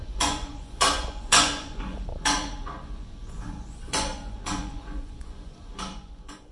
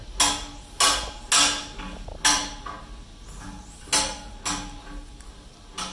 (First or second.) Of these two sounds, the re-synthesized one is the first